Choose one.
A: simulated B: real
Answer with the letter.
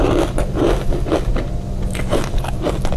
B